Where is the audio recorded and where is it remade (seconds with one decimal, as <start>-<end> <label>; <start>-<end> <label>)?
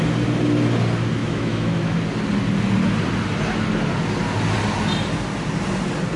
0.0-1.2 recorded; 1.2-2.0 remade; 2.0-6.2 recorded